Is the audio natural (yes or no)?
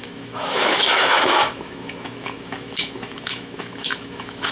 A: no